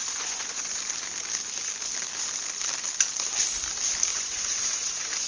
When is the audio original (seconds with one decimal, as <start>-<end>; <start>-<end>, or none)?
0.8-4.1